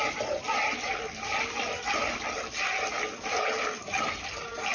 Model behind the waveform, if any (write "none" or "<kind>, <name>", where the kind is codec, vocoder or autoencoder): none